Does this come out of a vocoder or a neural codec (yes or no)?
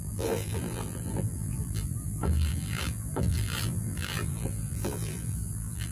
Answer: yes